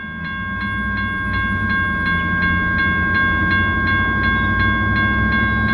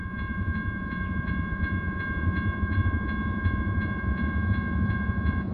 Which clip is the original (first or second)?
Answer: first